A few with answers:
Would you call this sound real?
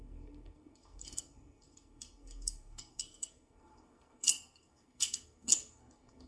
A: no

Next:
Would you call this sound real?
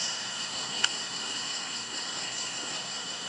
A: no